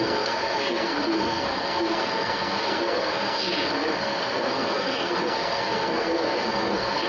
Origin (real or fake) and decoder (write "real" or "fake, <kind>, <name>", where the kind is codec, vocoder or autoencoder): fake, codec, SNAC